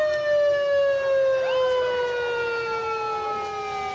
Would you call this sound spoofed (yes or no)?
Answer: no